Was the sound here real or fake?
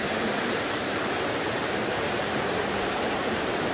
fake